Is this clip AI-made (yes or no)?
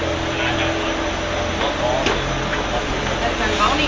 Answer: no